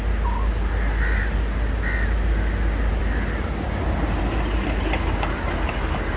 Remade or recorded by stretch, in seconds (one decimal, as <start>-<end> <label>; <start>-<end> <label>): 0.0-6.2 recorded